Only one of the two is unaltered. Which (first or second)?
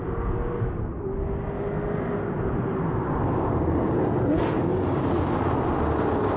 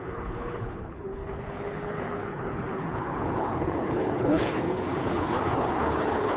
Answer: first